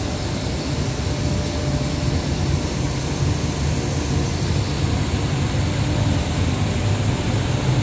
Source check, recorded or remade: recorded